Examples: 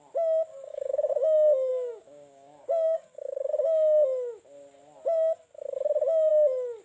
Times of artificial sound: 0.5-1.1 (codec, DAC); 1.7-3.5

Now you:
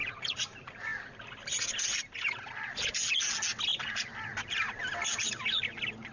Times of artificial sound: 3.7-4.6 (vocoder, BigVGAN v2)

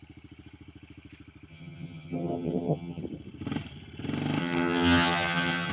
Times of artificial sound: 1.5-3.0 (vocoder, HiFi-GAN); 4.4-5.7

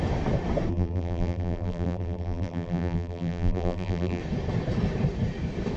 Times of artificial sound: 0.7-4.2 (vocoder, BigVGAN v2)

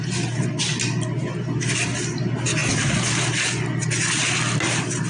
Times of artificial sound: none

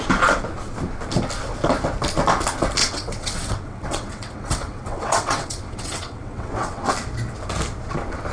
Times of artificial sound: 2.8-6.9 (vocoder, WaveNeXt)

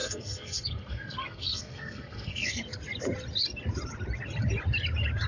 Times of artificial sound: 0.0-2.6 (codec, SNAC)